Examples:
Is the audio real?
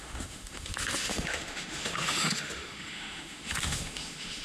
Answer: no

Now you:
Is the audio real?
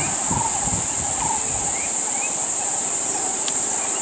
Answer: yes